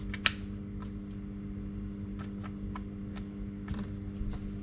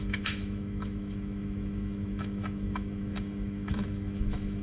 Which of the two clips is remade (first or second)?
second